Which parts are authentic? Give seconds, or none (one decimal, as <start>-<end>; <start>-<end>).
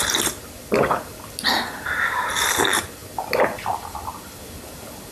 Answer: 0.0-5.1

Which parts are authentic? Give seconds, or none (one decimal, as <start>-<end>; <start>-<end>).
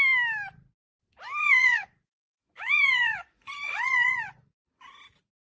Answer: 0.0-1.4; 4.7-5.5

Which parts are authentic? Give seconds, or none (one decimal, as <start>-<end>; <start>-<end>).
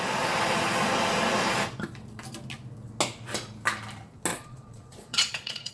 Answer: 0.0-4.3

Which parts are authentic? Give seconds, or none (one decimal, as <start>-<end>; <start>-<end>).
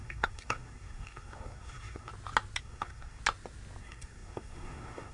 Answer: 2.1-2.6; 3.2-3.8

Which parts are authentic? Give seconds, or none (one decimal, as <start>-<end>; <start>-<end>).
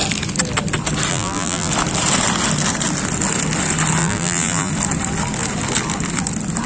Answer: 0.0-1.1; 1.7-4.0; 4.7-6.7